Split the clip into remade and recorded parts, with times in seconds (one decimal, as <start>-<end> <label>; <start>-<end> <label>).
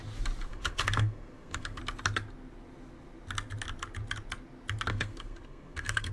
0.0-0.5 recorded; 0.5-1.8 remade; 1.8-4.9 recorded; 4.9-6.1 remade